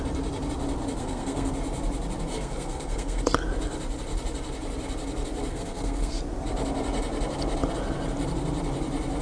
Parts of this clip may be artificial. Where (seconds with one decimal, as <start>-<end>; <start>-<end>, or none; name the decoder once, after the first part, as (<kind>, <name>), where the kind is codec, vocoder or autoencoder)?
1.0-1.5 (codec, SNAC); 2.3-3.2; 5.5-6.2